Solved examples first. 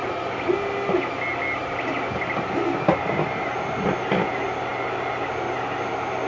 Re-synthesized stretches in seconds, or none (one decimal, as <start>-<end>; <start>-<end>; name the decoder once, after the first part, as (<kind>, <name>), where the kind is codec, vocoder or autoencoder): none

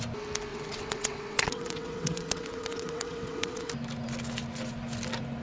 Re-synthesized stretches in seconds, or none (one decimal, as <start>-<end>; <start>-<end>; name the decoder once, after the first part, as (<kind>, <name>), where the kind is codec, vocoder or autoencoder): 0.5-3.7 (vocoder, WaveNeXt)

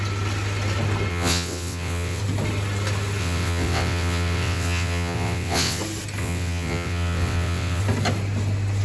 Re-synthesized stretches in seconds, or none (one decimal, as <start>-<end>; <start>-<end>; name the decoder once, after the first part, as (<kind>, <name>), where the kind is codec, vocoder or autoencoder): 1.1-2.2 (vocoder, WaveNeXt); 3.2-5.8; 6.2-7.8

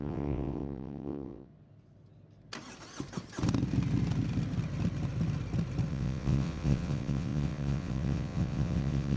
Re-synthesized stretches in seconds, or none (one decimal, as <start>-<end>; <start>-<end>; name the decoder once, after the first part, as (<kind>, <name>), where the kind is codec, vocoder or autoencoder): 0.0-1.5 (vocoder, WaveNeXt); 5.9-9.2